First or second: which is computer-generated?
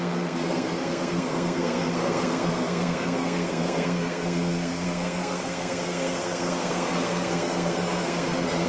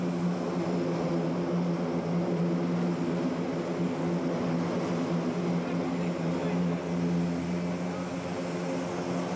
first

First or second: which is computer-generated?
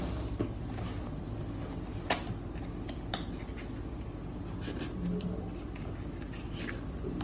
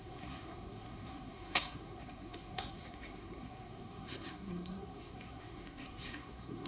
second